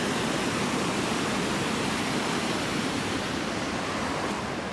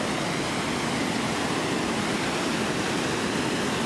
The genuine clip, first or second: second